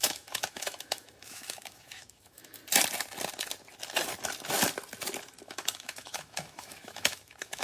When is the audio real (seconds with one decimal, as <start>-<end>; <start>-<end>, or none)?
2.6-5.4